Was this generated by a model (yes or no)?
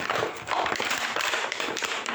yes